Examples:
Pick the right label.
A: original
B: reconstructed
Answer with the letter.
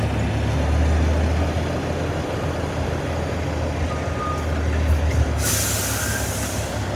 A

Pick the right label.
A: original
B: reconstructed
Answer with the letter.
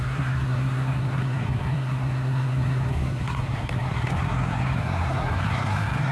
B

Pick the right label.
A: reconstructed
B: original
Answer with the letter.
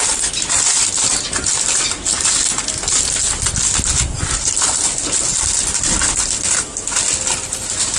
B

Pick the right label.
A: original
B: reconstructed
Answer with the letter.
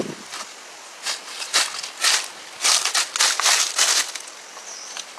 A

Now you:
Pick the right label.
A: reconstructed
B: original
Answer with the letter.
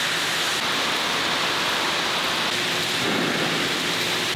B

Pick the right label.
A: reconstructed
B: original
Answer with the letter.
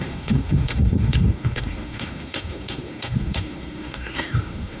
A